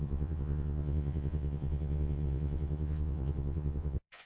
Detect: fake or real fake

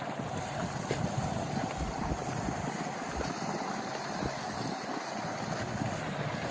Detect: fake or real real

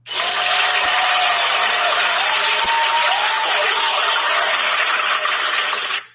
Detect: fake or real real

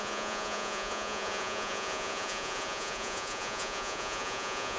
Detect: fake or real fake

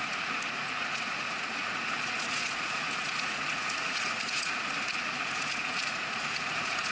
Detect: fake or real fake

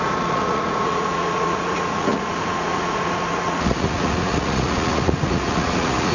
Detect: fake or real fake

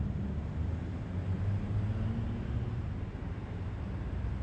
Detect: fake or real real